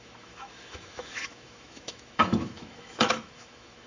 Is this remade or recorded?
remade